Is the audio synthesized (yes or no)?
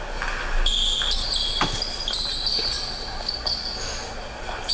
no